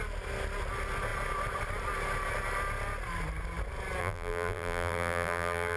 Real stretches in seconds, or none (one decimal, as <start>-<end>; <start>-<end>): 0.0-4.0